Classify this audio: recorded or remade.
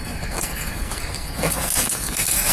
remade